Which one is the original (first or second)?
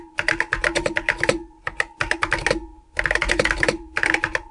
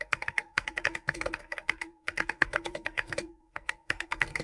first